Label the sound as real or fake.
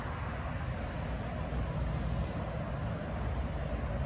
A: real